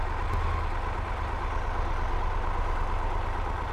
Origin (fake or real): real